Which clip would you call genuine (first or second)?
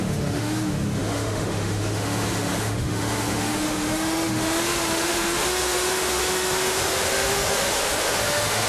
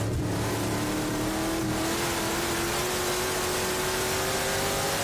second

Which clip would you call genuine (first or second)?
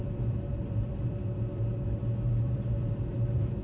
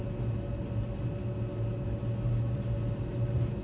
second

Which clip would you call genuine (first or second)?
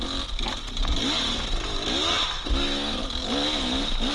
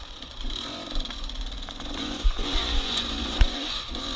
first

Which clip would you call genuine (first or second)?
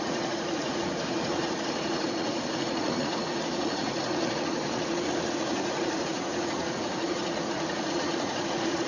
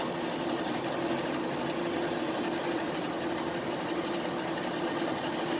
second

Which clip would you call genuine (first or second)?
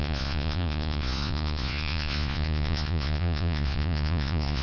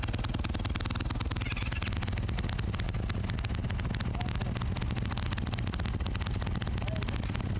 second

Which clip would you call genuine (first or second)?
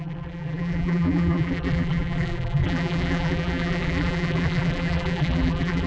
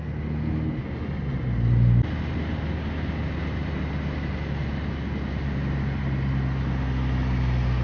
second